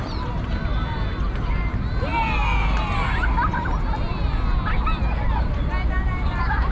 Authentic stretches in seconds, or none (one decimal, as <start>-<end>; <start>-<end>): 0.0-6.7